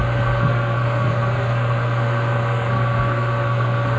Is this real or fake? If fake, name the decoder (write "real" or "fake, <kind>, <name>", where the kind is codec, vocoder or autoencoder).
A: fake, codec, SNAC